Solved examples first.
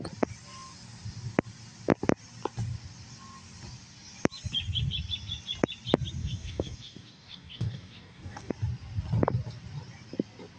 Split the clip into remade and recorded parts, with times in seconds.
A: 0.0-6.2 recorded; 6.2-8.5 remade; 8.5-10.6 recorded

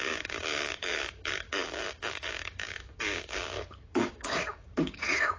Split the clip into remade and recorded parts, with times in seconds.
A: 0.0-5.4 remade